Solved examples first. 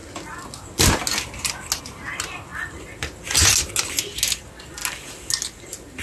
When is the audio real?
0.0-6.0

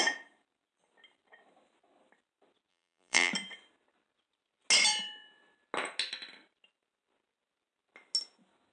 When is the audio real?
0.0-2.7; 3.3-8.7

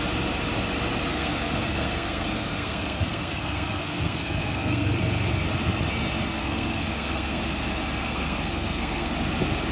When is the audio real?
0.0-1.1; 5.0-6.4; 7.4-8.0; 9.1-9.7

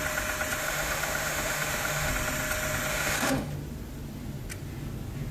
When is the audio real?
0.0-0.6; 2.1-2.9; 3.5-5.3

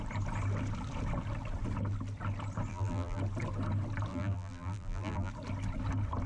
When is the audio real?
0.0-2.7; 3.2-4.1; 5.3-6.3

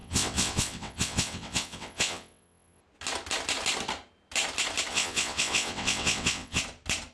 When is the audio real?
2.8-4.9; 6.6-7.1

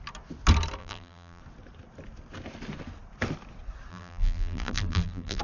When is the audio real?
0.0-0.8; 1.4-3.9